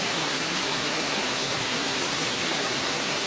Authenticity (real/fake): fake